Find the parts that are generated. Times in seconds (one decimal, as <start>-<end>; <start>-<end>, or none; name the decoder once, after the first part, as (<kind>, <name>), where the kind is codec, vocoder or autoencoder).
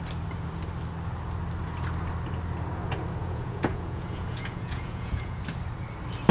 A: 3.2-5.4 (vocoder, Vocos)